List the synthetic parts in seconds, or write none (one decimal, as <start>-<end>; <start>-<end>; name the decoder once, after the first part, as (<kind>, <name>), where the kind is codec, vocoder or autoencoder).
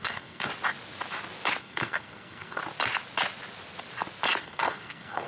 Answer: 0.0-0.5 (codec, SNAC); 1.6-2.6; 4.4-5.3